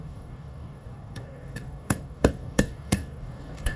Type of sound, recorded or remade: remade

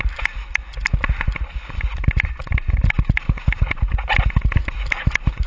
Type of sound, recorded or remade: recorded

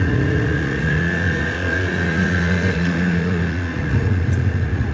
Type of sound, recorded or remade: remade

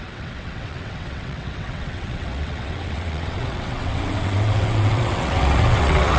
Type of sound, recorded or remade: remade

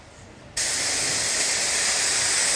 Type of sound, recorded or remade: recorded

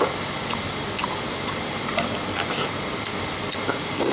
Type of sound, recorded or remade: recorded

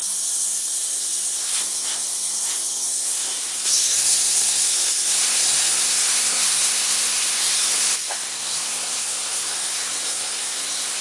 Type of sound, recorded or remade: remade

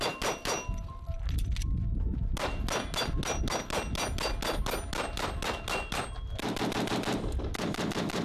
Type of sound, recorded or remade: recorded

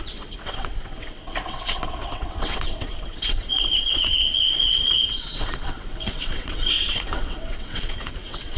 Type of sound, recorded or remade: remade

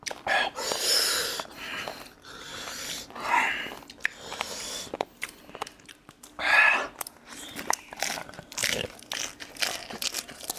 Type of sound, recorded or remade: recorded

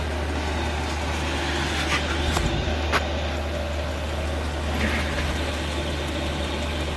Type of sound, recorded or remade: recorded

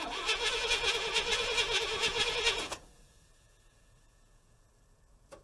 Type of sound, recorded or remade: remade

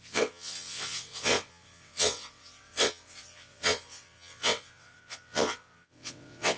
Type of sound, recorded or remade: remade